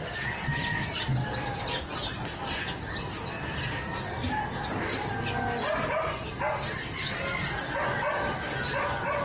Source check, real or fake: real